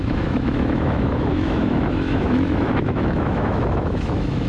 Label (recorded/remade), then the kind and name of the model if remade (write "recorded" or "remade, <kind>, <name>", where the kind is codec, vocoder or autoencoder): remade, autoencoder, DAC-VAE